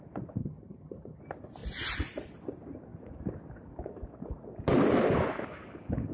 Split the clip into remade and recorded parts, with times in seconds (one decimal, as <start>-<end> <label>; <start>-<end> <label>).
0.0-0.4 recorded; 0.4-1.2 remade; 1.2-6.1 recorded